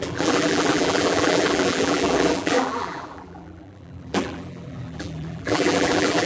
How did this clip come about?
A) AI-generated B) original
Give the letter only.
A